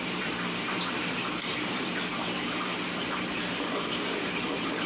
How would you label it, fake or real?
fake